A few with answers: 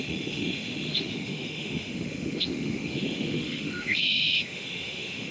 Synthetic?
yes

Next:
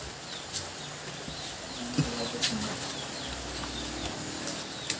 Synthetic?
no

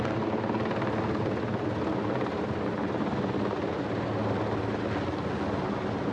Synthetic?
no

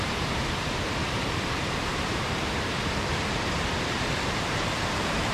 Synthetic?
yes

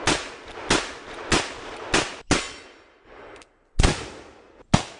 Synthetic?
no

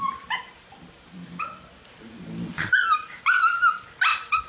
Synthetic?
no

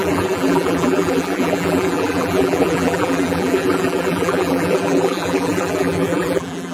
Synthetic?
yes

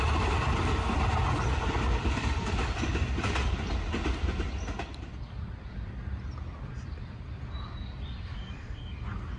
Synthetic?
yes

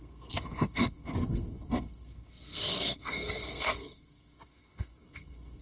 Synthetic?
yes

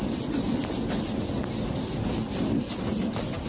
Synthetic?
no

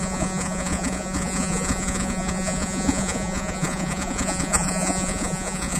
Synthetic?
yes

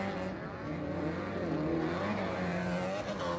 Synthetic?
no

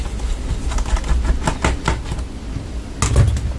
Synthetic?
no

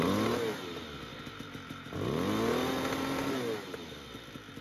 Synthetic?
no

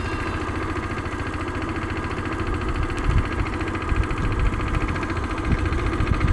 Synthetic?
no